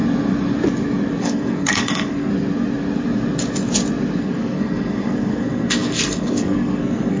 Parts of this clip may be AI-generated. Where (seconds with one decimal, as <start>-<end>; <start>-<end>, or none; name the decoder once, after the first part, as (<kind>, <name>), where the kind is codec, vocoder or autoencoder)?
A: 1.2-2.3 (codec, SNAC); 4.2-7.2